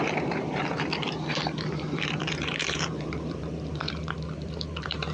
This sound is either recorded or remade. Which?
remade